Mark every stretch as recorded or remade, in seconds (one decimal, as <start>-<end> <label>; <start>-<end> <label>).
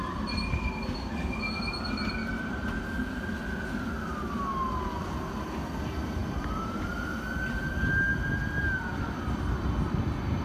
0.0-6.2 recorded; 6.2-6.8 remade; 6.8-10.4 recorded